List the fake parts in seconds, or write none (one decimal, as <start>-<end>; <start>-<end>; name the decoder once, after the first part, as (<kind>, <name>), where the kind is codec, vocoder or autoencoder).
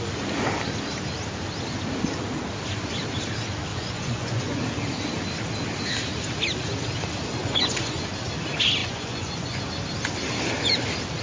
3.7-4.6 (vocoder, Vocos); 7.4-8.0; 8.8-9.6